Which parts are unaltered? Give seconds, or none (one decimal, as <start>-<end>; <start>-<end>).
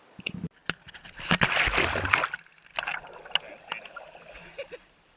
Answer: 0.0-5.2